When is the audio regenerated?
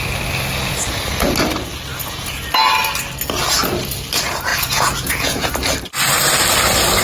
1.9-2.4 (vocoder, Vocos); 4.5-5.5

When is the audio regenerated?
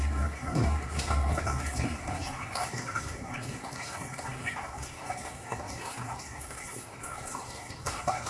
0.0-8.3 (codec, SNAC)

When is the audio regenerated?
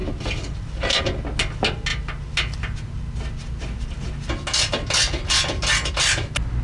none